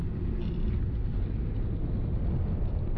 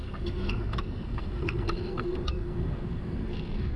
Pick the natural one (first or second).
first